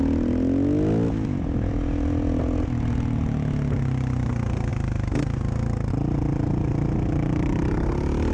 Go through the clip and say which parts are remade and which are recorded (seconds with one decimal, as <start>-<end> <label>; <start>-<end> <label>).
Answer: 0.0-8.3 recorded